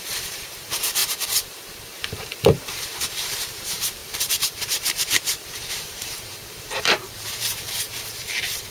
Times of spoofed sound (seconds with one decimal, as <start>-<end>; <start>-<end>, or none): 0.0-8.7